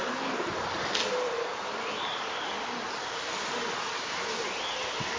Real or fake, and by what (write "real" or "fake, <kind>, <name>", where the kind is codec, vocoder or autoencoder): real